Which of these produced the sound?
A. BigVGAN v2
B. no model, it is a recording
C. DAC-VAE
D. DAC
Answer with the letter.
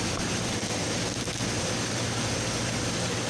B